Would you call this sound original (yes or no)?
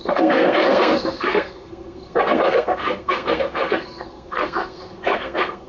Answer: no